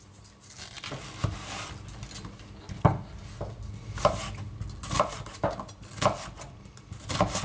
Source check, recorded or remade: recorded